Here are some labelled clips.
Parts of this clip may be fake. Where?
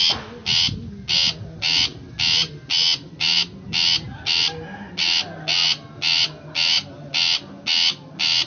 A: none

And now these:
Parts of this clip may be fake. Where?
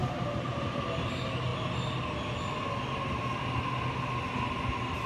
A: 0.0-0.8 (vocoder, BigVGAN v2)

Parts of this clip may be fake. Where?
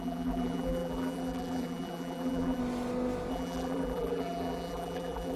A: 0.0-2.6 (vocoder, BigVGAN v2); 3.3-5.4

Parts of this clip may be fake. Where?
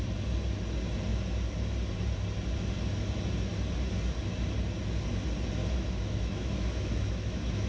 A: 5.6-7.7 (autoencoder, DAC-VAE)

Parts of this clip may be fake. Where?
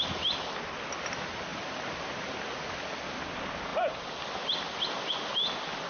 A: 3.7-4.3 (vocoder, BigVGAN v2)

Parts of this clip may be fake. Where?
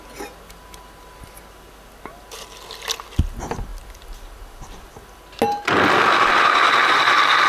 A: none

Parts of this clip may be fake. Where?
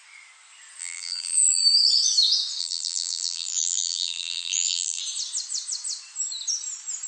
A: 0.8-1.6 (vocoder, BigVGAN v2); 2.6-5.0